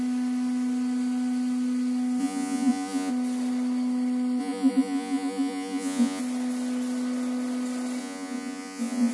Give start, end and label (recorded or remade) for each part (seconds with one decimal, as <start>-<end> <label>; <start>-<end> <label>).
0.0-2.2 recorded; 2.2-3.1 remade; 3.1-4.4 recorded; 4.4-6.2 remade; 6.2-8.0 recorded; 8.0-9.1 remade